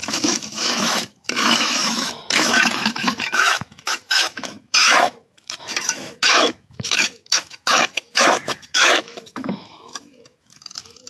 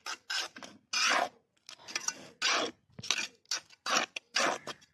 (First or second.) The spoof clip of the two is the first